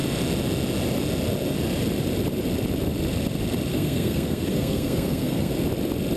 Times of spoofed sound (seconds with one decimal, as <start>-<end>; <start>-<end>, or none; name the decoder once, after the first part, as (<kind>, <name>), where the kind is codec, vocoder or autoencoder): 3.7-5.5 (codec, SNAC)